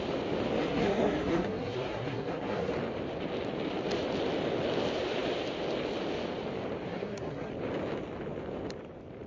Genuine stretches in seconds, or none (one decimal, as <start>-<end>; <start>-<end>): 0.0-0.6; 2.7-6.9; 7.5-9.3